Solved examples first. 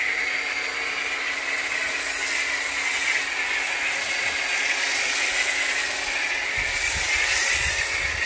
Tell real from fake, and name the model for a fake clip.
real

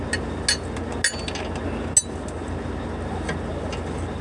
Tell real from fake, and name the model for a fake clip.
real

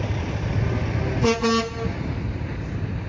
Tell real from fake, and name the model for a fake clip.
real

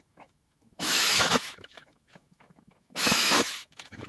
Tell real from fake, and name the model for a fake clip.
fake, autoencoder, DAC-VAE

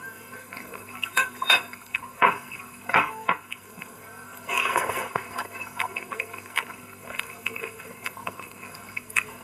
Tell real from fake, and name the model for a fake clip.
fake, codec, SNAC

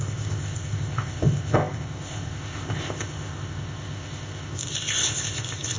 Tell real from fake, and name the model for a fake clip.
fake, codec, ZipCodec